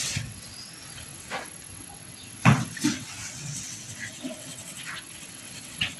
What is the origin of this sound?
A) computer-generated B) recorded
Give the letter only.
A